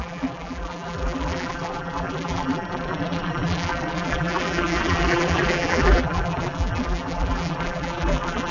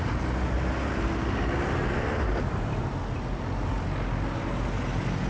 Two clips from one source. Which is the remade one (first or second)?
first